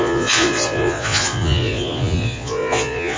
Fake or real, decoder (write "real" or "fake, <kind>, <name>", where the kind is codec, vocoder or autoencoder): fake, vocoder, Vocos